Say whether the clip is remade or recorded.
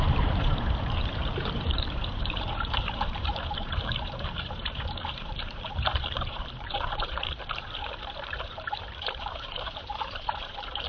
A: remade